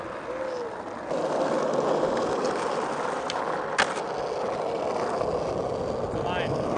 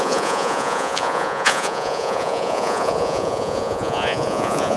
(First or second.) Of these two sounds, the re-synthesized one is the second